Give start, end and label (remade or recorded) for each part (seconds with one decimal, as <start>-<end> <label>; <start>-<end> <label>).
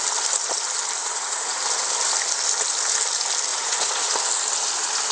0.0-1.0 recorded; 1.0-1.6 remade; 1.6-3.5 recorded; 3.5-4.1 remade; 4.1-5.1 recorded